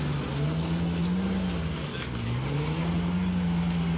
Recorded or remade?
recorded